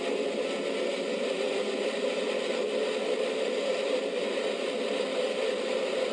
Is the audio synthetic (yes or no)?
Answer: no